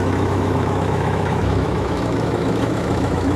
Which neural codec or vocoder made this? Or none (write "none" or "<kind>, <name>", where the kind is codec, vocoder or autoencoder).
autoencoder, DAC-VAE